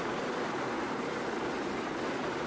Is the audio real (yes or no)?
yes